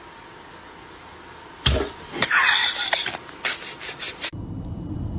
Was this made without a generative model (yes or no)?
yes